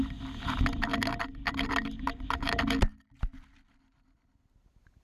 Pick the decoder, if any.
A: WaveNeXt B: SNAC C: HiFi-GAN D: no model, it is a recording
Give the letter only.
D